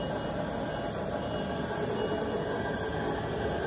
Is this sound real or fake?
real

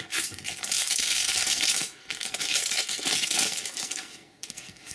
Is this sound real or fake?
fake